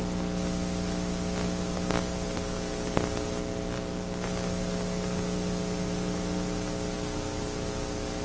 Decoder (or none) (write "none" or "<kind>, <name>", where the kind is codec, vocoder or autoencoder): none